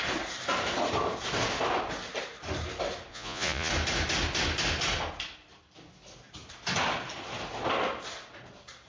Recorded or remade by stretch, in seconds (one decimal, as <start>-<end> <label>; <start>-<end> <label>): 0.0-3.1 recorded; 3.1-3.7 remade; 3.7-8.9 recorded